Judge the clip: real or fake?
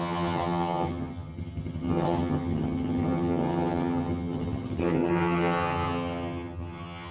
fake